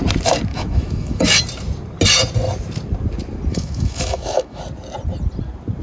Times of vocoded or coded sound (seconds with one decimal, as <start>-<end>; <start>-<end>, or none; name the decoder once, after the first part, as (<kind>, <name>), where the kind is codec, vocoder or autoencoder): 0.5-1.4 (autoencoder, DAC-VAE); 3.5-4.6